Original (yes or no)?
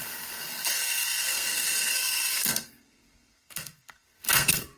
no